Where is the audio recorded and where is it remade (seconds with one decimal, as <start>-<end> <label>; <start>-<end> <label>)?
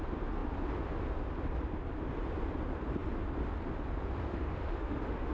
0.0-4.3 recorded; 4.3-5.3 remade